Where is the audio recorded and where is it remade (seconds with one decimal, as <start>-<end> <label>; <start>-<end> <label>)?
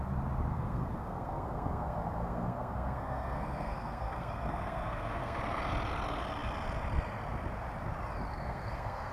0.0-0.5 recorded; 0.5-5.4 remade; 5.4-8.3 recorded; 8.3-9.1 remade